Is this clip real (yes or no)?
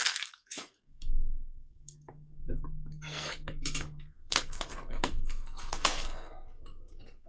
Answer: no